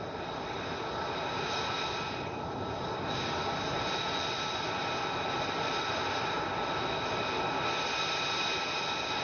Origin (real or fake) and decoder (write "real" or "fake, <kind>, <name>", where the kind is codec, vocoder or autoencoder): real